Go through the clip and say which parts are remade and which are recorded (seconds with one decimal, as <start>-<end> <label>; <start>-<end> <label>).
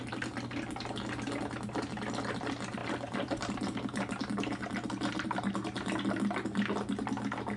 0.0-2.8 recorded; 2.8-5.1 remade; 5.1-7.6 recorded